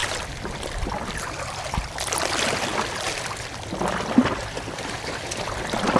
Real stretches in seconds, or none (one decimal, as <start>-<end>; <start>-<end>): 2.7-4.4